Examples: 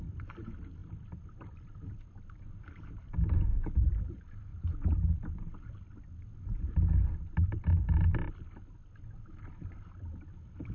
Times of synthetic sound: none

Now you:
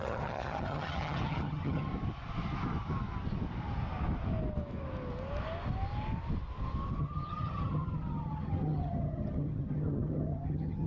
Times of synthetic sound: 0.0-1.9 (vocoder, HiFi-GAN); 7.0-10.9